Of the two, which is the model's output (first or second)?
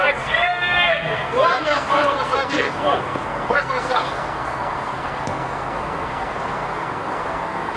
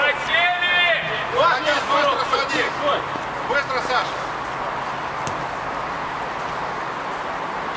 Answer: first